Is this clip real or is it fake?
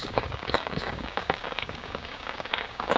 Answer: fake